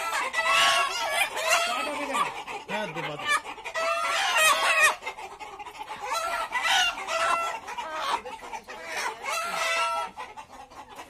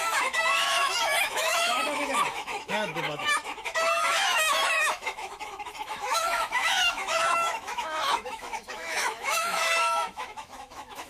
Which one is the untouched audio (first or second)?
first